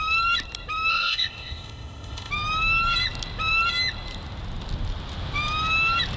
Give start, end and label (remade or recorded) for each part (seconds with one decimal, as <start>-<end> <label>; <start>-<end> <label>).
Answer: 0.0-0.9 recorded; 0.9-2.3 remade; 2.3-6.2 recorded